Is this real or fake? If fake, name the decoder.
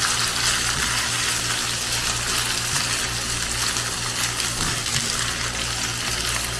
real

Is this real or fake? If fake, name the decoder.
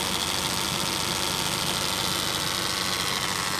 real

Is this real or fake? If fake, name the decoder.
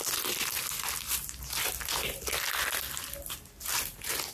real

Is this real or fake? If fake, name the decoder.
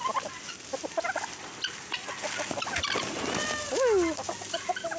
real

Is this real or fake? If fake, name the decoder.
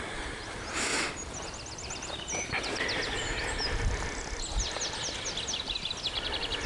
real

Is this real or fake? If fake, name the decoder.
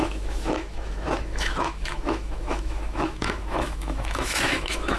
fake, autoencoder, DAC-VAE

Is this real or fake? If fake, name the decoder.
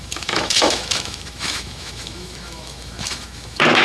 fake, autoencoder, DAC-VAE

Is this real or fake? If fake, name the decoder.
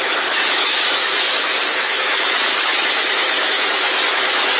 fake, autoencoder, DAC-VAE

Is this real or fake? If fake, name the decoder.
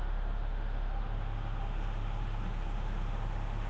fake, autoencoder, DAC-VAE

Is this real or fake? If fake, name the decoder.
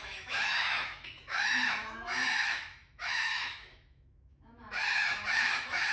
fake, autoencoder, DAC-VAE